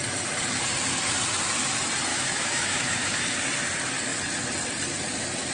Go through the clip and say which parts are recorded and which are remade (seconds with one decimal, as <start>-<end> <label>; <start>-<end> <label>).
0.0-2.1 recorded; 2.1-3.4 remade; 3.4-5.5 recorded